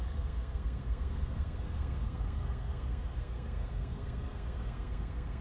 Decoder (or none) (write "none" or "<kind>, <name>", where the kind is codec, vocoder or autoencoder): codec, SNAC